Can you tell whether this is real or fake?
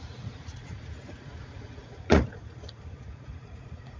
fake